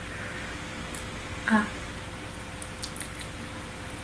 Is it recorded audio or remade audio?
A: recorded